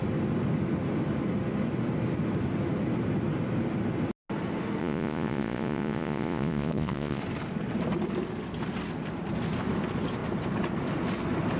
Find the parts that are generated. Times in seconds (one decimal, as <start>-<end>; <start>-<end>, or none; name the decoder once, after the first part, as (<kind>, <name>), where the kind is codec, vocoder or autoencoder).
4.8-7.2 (vocoder, Vocos)